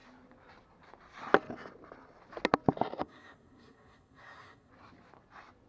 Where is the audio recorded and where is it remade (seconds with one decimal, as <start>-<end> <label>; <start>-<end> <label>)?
0.0-3.0 recorded; 3.0-4.7 remade; 4.7-5.7 recorded